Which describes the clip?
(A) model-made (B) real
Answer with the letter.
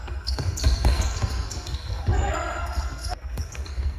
A